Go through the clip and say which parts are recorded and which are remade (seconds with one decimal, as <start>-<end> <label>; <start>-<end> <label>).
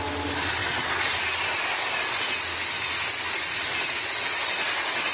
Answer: 0.0-5.1 recorded